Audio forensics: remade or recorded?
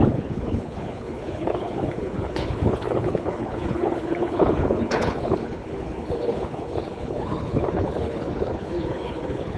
remade